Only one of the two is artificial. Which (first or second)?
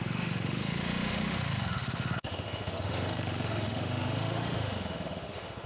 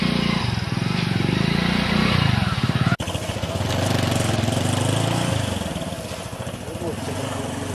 first